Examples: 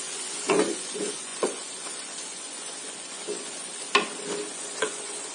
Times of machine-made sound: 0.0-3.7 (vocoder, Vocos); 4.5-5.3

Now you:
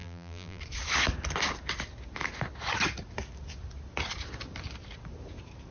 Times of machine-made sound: 0.0-0.6 (vocoder, BigVGAN v2)

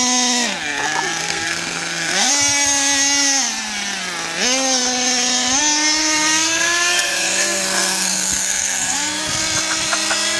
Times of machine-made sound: 1.2-2.3 (codec, SNAC); 6.0-9.4

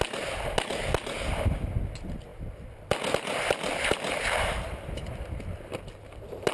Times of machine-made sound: none

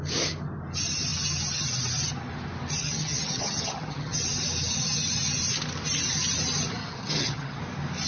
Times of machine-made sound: 2.8-4.2 (vocoder, HiFi-GAN); 6.8-7.6

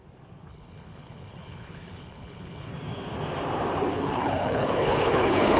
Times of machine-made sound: 0.5-2.7 (codec, HILCodec); 3.9-5.6

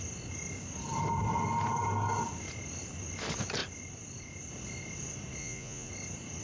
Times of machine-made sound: 5.4-5.9 (vocoder, Vocos)